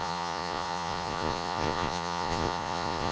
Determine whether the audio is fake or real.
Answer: fake